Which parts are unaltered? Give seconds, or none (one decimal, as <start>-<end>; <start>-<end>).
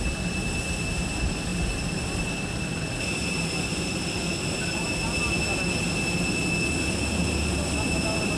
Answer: 0.0-8.4